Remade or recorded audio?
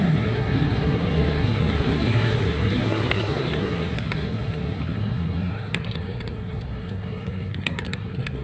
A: remade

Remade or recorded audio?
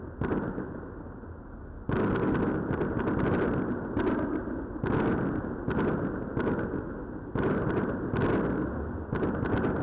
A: recorded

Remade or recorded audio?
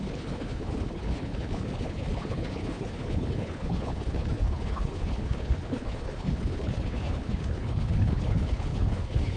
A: remade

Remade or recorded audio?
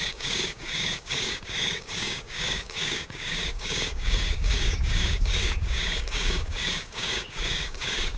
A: remade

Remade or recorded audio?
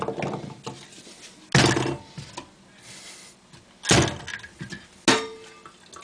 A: recorded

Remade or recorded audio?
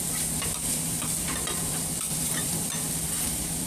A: remade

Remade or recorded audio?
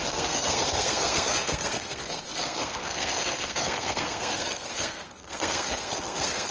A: remade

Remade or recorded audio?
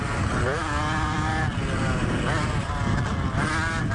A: recorded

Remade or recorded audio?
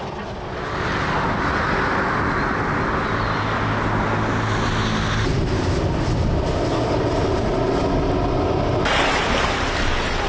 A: recorded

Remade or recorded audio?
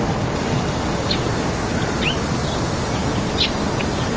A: recorded